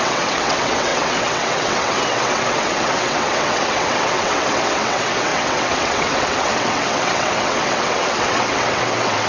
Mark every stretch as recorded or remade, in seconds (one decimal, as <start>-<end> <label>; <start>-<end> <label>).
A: 0.0-9.3 remade